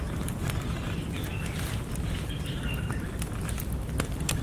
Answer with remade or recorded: recorded